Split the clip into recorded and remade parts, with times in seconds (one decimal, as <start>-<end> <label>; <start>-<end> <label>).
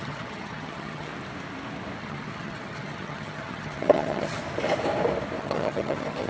0.0-1.1 remade; 1.1-2.0 recorded; 2.0-4.4 remade; 4.4-5.4 recorded; 5.4-6.3 remade